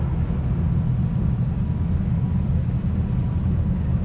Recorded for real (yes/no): yes